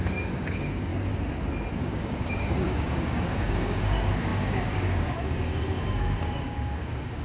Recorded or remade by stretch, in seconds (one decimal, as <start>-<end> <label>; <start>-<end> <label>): 0.0-0.9 remade; 0.9-1.7 recorded; 1.7-7.2 remade